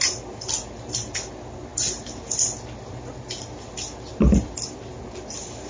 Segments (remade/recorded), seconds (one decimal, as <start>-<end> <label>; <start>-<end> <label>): 0.0-5.7 recorded